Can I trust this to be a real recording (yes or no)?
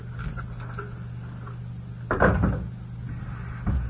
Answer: yes